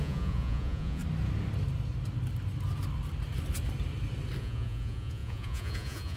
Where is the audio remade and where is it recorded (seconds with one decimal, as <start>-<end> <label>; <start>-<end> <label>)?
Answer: 0.0-1.0 remade; 1.0-4.4 recorded; 4.4-6.2 remade